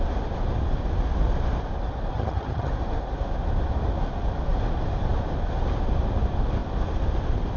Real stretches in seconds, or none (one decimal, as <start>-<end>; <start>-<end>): 0.0-2.1; 2.7-7.6